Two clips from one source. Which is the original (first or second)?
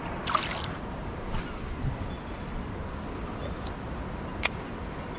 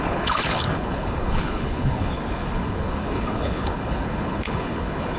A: first